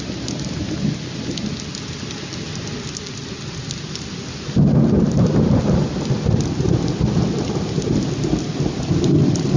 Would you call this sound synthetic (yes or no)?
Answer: no